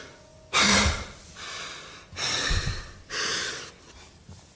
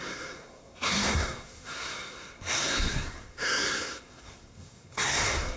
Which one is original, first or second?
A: first